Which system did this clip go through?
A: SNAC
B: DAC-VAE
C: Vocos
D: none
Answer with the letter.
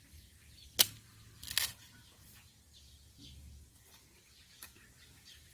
D